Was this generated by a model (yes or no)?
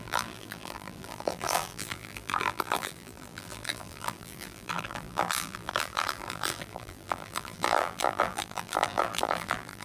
yes